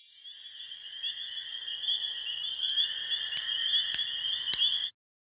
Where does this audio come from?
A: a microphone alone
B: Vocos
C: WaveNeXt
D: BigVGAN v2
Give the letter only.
A